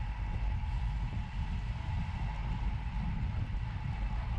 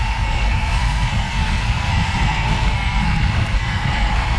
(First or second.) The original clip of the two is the first